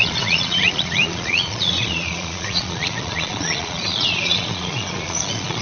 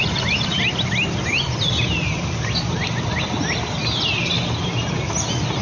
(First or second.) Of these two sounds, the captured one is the second